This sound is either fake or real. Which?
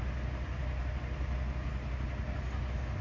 real